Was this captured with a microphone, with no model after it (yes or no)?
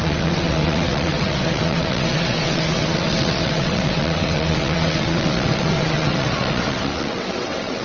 no